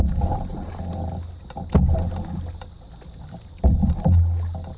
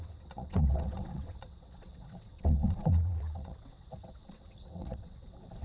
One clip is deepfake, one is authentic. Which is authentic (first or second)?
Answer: first